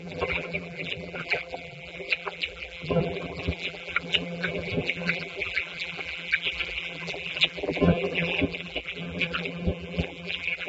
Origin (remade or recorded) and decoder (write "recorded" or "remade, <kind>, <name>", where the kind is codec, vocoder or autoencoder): remade, vocoder, BigVGAN v2